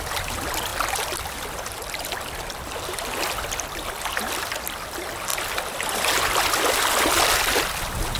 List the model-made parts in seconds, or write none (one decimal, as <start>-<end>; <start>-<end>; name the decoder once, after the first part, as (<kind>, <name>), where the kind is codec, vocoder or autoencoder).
none